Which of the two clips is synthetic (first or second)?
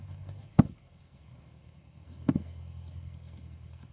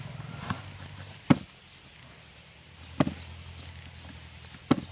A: first